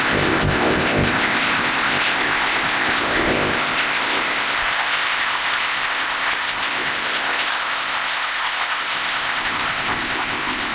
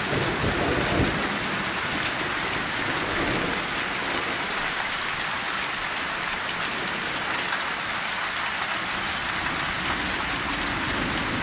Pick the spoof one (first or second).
first